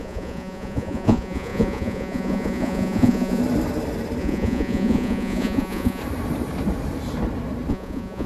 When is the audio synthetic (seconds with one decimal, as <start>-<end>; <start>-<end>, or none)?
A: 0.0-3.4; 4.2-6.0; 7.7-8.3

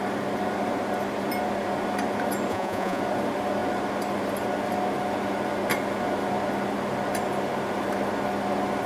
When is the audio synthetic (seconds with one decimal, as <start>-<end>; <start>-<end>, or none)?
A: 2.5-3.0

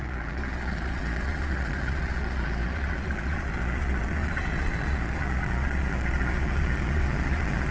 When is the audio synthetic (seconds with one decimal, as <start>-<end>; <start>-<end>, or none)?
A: 0.0-7.7

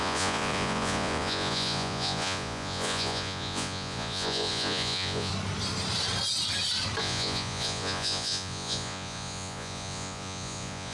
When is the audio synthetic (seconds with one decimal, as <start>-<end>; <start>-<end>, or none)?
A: 0.0-5.3; 7.0-10.9

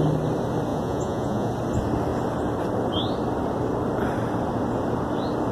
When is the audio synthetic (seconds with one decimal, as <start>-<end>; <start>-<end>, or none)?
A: 0.7-1.5

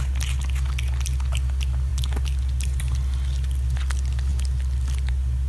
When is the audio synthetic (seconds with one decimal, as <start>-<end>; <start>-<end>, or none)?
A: none